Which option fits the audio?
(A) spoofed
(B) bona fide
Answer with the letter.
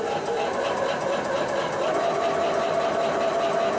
B